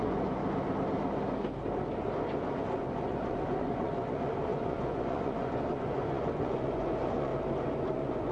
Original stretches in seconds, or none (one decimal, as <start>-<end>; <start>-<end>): 0.4-2.6; 7.3-7.9